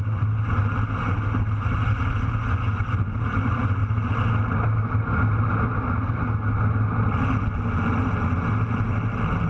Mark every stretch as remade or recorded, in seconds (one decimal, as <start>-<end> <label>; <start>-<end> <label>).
0.0-9.5 recorded